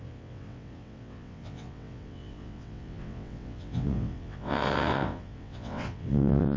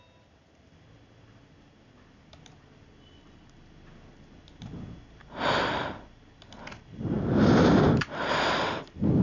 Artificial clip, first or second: first